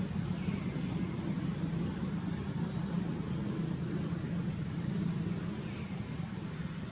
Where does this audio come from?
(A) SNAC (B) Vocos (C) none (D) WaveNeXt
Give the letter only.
C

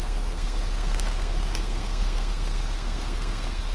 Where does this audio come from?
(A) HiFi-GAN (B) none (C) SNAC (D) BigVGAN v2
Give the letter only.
C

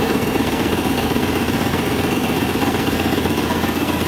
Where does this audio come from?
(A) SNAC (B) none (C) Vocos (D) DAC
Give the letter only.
A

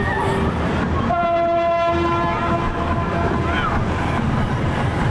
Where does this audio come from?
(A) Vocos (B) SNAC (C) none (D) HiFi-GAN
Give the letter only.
C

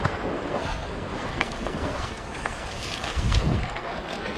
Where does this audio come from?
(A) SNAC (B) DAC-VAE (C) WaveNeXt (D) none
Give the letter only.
A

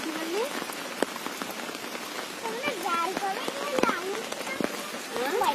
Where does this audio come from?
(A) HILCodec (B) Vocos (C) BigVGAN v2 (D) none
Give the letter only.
D